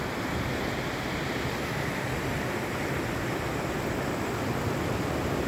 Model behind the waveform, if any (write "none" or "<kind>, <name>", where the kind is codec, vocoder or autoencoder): none